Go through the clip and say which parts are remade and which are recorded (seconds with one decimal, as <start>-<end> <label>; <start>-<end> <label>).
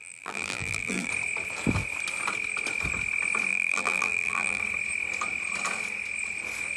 0.0-1.1 remade; 1.1-3.5 recorded; 3.5-4.6 remade; 4.6-6.8 recorded